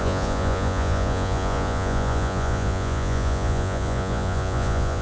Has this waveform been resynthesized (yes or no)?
yes